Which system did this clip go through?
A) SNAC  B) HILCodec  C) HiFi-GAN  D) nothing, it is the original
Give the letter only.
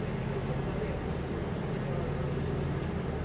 D